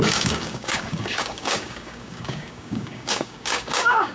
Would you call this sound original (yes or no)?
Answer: no